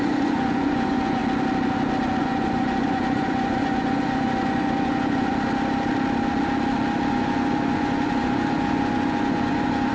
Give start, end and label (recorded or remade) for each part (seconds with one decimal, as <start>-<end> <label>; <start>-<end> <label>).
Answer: 0.0-1.2 remade; 1.2-2.2 recorded; 2.2-5.3 remade; 5.3-7.1 recorded; 7.1-9.9 remade